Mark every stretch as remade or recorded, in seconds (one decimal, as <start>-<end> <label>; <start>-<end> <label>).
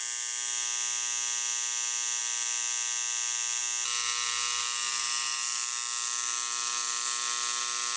0.0-8.0 recorded